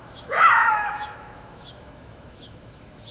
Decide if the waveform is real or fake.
fake